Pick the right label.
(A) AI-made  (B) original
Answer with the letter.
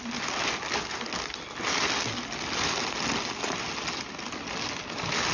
B